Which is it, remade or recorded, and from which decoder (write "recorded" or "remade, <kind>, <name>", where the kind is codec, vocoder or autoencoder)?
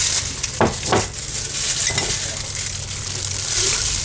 recorded